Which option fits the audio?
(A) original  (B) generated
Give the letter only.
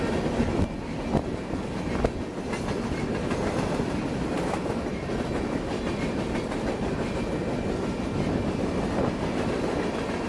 A